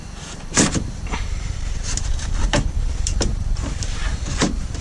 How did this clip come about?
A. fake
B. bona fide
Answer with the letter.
A